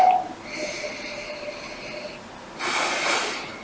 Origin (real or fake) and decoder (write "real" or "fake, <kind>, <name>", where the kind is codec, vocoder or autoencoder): real